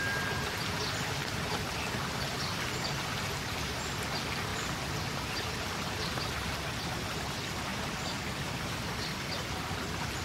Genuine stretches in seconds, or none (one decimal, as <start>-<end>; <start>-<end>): 0.0-10.2